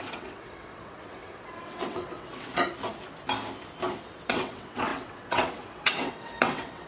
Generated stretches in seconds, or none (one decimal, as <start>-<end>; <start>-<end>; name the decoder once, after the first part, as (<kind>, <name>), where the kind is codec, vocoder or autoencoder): 0.0-2.6 (vocoder, WaveNeXt); 4.3-6.9